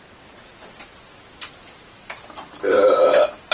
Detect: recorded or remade recorded